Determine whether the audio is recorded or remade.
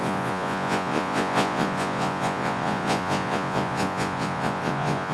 remade